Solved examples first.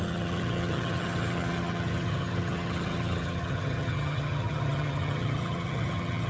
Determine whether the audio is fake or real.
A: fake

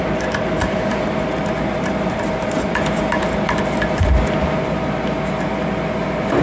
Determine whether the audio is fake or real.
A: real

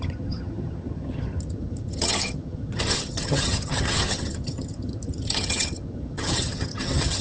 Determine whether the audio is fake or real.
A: fake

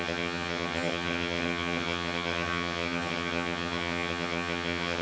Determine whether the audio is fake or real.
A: fake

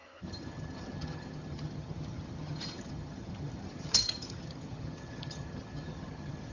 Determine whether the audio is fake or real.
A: fake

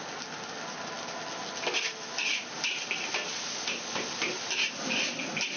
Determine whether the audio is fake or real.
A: real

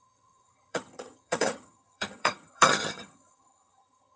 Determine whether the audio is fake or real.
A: fake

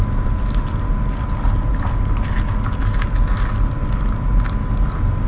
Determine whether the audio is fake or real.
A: real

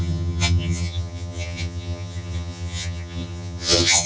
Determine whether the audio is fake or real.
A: fake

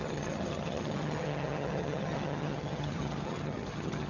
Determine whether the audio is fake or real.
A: fake